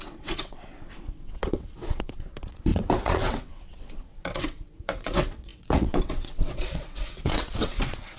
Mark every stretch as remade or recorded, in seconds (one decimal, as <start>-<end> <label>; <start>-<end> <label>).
0.0-8.2 remade